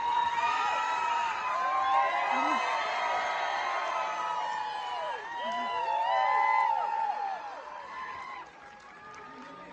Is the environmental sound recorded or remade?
remade